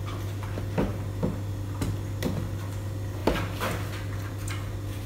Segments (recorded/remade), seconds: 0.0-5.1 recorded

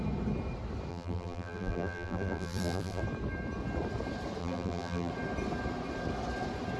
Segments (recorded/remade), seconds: 0.0-0.9 recorded; 0.9-3.0 remade; 3.0-4.4 recorded; 4.4-5.1 remade; 5.1-6.8 recorded